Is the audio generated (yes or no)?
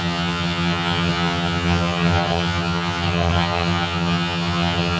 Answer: yes